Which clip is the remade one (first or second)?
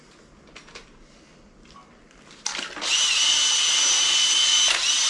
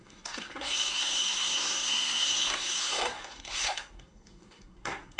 second